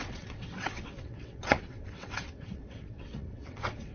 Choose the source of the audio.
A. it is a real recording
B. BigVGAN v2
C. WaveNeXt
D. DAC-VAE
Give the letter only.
C